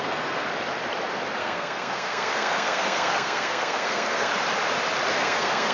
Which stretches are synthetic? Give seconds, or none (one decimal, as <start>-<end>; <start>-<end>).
0.0-0.5; 1.4-4.3; 5.1-5.7